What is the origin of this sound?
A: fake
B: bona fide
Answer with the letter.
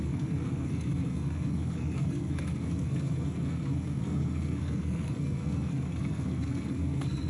A